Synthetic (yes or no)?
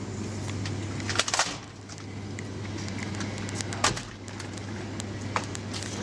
no